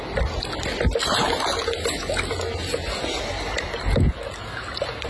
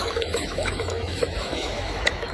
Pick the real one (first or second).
first